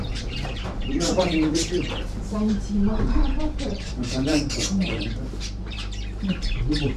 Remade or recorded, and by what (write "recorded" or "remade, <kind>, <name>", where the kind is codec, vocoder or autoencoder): remade, vocoder, BigVGAN v2